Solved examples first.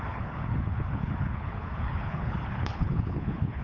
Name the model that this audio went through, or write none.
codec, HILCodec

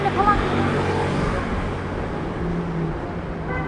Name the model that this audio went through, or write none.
none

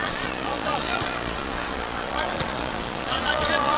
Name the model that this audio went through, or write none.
vocoder, Vocos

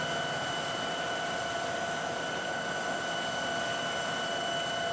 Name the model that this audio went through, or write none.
none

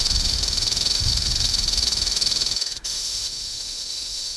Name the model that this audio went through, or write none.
autoencoder, DAC-VAE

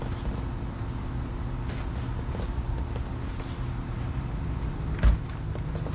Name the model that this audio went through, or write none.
none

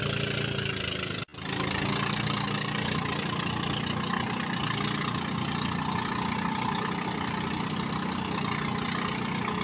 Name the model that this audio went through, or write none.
none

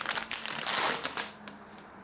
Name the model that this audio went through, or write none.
none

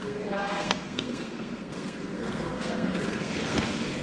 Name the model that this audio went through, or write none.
codec, SNAC